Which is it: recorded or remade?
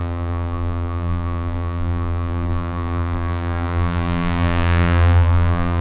remade